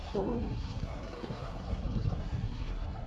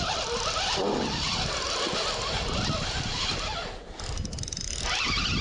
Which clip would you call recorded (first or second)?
second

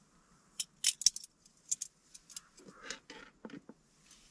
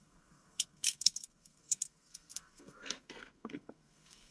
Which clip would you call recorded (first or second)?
first